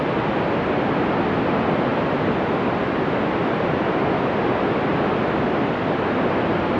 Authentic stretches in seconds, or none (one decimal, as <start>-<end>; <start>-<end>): 0.0-6.8